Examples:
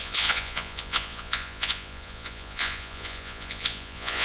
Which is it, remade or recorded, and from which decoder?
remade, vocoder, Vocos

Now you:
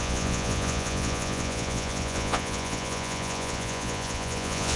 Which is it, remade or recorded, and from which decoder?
remade, vocoder, Vocos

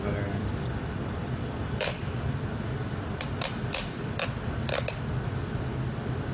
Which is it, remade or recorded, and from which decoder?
recorded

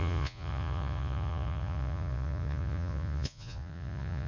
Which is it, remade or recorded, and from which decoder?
remade, vocoder, Vocos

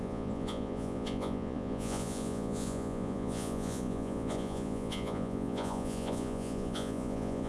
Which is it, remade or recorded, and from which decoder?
remade, vocoder, Vocos